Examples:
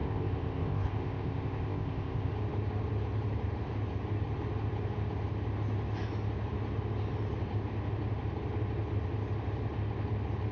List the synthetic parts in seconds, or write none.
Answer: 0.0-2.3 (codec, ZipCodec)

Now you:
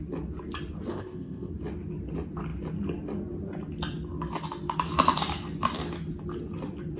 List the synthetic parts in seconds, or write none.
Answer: 0.9-1.5 (codec, ZipCodec)